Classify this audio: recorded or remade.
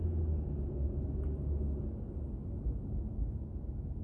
recorded